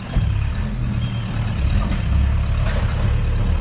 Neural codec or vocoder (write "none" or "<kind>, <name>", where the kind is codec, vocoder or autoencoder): none